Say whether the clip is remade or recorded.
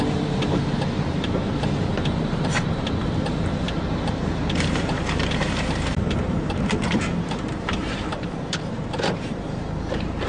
remade